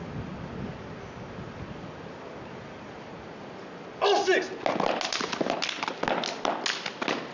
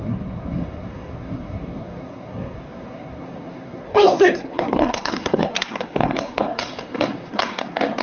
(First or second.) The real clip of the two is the first